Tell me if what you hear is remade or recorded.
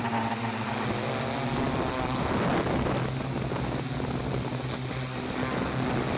recorded